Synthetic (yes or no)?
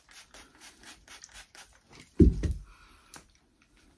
yes